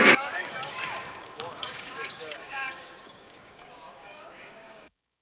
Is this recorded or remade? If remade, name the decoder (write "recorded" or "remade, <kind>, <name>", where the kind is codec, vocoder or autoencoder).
remade, codec, DAC